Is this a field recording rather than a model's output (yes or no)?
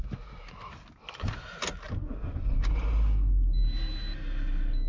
yes